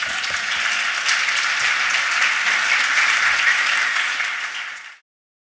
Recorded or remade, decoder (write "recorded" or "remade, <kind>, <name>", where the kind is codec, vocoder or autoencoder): recorded